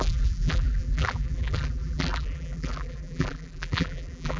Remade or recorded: remade